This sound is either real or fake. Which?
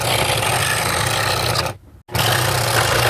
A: real